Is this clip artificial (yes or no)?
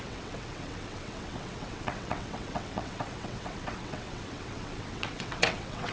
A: yes